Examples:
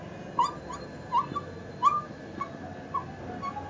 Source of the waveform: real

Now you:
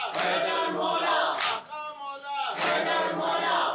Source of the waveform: real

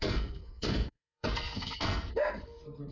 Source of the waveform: fake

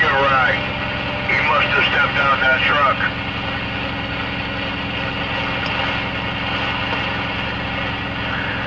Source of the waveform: real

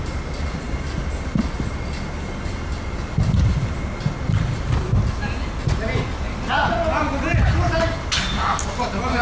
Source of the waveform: real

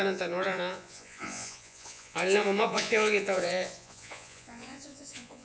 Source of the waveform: fake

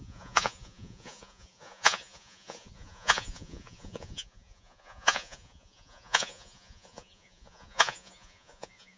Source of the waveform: fake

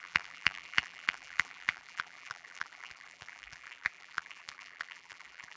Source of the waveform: fake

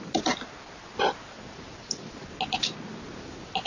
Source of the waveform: real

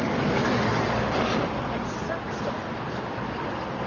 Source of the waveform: real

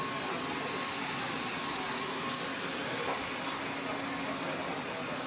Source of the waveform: real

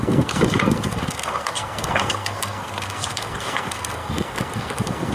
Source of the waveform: fake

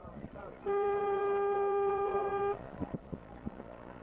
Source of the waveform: fake